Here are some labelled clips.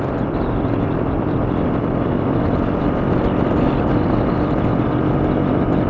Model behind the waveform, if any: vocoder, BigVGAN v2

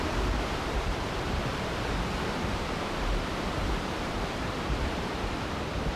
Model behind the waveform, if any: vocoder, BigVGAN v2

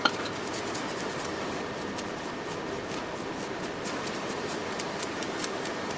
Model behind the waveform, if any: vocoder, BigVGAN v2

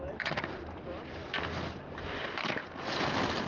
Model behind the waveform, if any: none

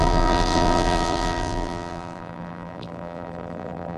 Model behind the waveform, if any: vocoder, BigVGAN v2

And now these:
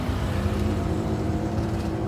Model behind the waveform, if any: vocoder, BigVGAN v2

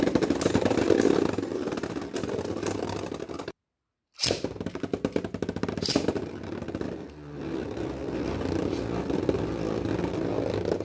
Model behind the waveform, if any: none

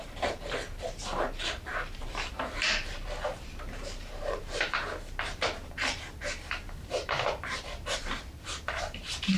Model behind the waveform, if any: vocoder, BigVGAN v2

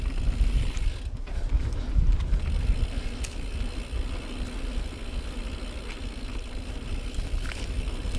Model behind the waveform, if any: none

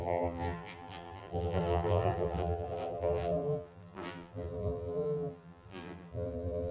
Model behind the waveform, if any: vocoder, BigVGAN v2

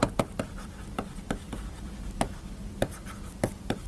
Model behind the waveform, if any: vocoder, BigVGAN v2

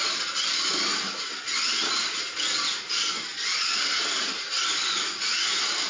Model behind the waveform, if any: none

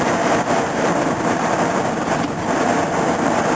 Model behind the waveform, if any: vocoder, BigVGAN v2